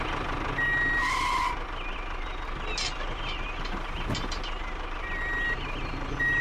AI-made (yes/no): no